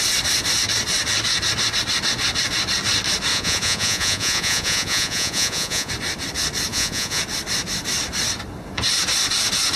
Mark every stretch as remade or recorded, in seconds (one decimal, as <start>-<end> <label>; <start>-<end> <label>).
0.0-3.3 recorded; 3.3-5.9 remade; 5.9-6.7 recorded; 6.7-7.2 remade; 7.2-9.8 recorded